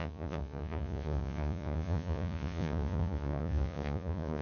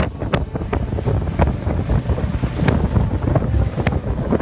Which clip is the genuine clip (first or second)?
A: second